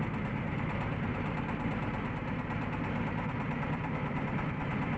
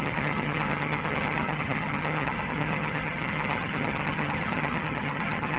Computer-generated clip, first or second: second